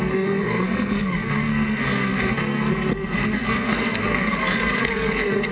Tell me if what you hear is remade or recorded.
remade